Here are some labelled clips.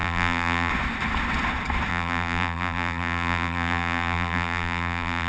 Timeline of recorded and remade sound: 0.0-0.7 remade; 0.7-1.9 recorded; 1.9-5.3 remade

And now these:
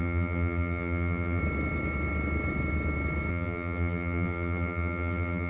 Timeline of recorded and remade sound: 0.0-1.4 remade; 1.4-3.3 recorded; 3.3-5.5 remade

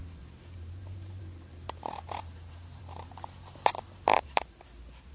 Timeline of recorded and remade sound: 0.0-3.1 remade; 3.1-4.1 recorded; 4.1-4.6 remade; 4.6-5.1 recorded

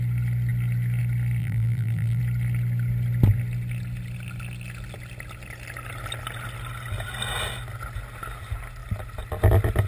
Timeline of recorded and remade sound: 0.0-1.4 recorded; 1.4-2.2 remade; 2.2-9.9 recorded